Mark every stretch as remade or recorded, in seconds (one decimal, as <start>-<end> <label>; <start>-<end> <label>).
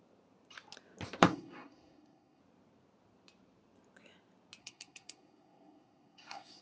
0.0-1.3 recorded; 1.3-2.4 remade; 2.4-4.6 recorded; 4.6-6.6 remade